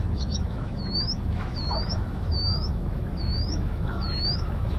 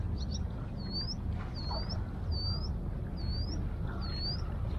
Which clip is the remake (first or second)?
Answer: first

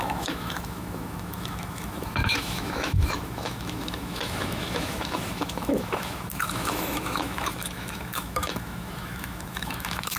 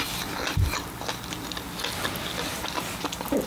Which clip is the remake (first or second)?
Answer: first